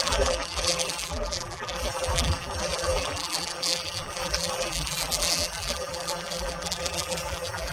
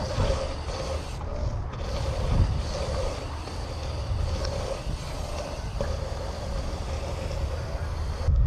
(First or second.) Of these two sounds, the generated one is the first